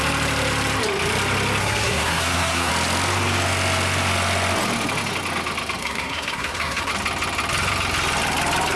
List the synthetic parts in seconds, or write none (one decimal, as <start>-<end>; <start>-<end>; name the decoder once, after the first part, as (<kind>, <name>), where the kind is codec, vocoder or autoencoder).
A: 1.6-2.7 (codec, SNAC); 5.8-6.9